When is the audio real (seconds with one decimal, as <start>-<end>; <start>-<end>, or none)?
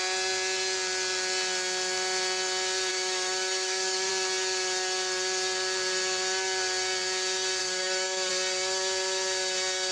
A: 0.0-2.9; 4.1-7.6; 8.3-9.9